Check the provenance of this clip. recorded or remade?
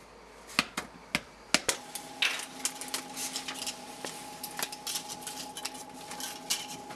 recorded